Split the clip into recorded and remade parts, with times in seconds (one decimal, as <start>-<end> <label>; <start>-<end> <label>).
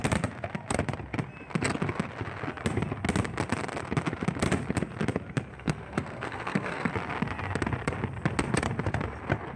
0.0-5.5 recorded; 5.5-6.9 remade; 6.9-9.6 recorded